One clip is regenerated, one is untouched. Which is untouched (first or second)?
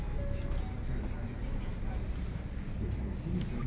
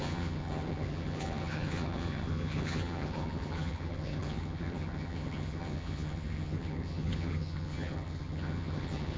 first